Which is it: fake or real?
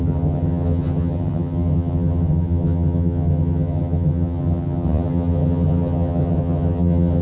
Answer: fake